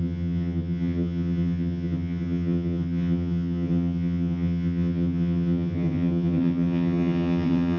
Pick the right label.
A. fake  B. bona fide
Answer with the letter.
A